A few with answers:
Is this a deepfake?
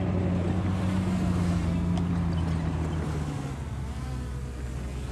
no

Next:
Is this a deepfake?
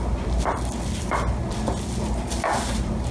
no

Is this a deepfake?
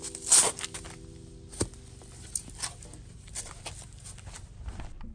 no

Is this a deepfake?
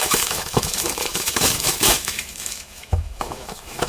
yes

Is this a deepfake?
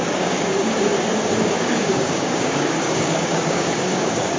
yes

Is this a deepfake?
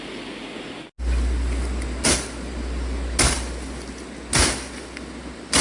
no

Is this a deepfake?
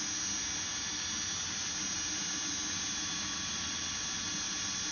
no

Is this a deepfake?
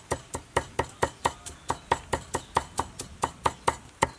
no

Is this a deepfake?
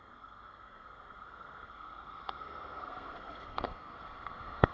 yes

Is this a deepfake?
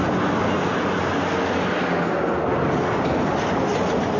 no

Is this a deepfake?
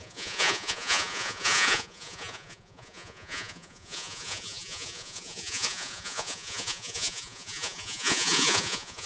yes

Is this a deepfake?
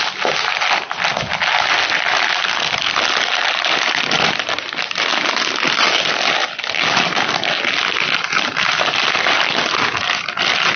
no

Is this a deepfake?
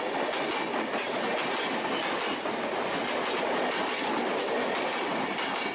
no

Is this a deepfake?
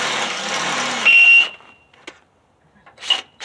no